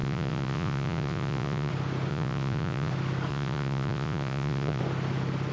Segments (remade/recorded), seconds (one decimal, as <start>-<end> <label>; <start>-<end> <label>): 0.0-1.7 remade; 1.7-2.1 recorded; 2.1-2.9 remade; 2.9-3.3 recorded; 3.3-4.8 remade; 4.8-5.5 recorded